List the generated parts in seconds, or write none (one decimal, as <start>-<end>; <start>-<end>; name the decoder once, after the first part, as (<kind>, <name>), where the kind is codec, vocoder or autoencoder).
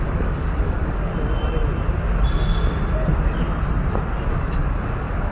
0.0-1.1 (codec, DAC); 4.3-5.3